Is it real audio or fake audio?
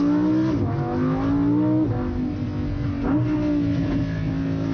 real